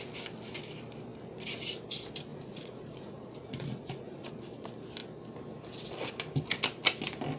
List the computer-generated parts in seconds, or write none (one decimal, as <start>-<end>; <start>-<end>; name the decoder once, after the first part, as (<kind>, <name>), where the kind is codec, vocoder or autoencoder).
2.3-4.3 (vocoder, Vocos)